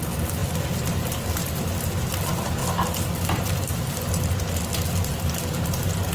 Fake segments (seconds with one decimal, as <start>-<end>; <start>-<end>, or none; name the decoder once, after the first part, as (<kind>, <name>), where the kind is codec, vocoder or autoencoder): none